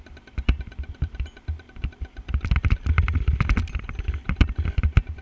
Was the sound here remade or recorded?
recorded